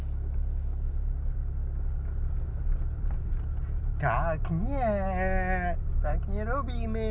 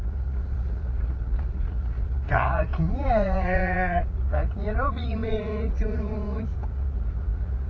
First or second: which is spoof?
second